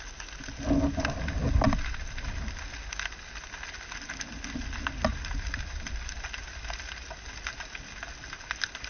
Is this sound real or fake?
real